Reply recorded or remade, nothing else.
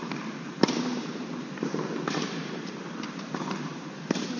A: recorded